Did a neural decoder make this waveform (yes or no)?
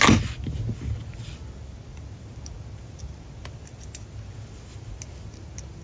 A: no